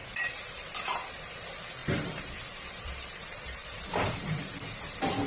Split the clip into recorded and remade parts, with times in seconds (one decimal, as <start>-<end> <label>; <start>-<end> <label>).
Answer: 0.0-5.3 remade